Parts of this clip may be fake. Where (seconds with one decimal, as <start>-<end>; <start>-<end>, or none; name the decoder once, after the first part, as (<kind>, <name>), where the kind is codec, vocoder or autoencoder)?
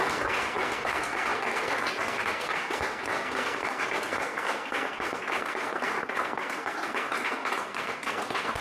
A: 0.0-8.6 (codec, SNAC)